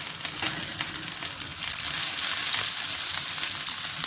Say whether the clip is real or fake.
real